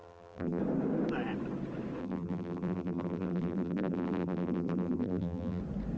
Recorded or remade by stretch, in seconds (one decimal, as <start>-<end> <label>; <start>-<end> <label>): 0.0-0.6 remade; 0.6-2.0 recorded; 2.0-5.6 remade; 5.6-6.0 recorded